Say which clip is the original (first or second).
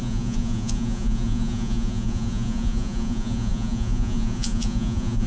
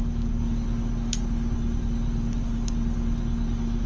second